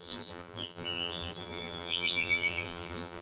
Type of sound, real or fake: fake